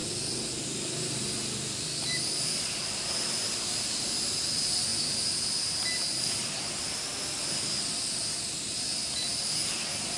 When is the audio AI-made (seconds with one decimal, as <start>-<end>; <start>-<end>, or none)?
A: 0.0-4.4